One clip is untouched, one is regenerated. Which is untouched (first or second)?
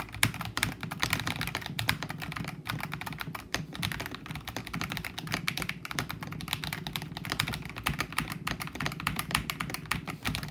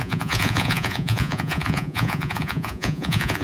first